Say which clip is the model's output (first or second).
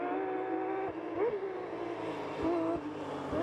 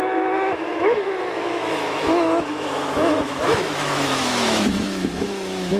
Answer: second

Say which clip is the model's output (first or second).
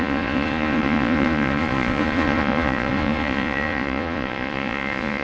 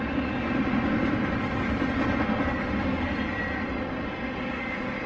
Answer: first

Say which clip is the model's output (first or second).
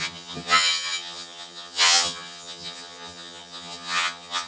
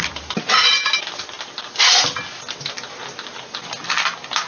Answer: first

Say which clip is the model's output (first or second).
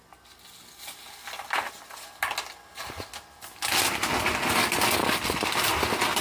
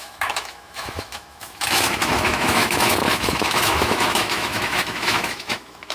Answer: second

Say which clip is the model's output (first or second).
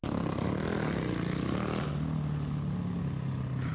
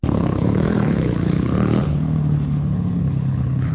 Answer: second